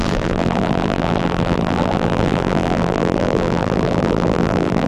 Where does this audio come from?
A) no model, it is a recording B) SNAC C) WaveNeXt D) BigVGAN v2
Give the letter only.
D